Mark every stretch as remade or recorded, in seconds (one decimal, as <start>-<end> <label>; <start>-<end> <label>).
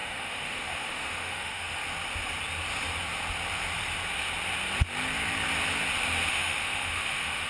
0.0-1.8 remade; 1.8-6.3 recorded; 6.3-7.5 remade